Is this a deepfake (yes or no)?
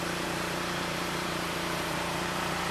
yes